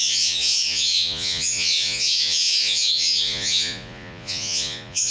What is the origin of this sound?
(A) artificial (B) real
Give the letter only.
A